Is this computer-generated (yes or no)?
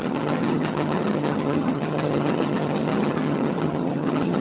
yes